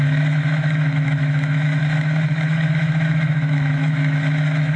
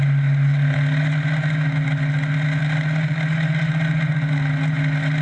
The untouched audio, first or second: second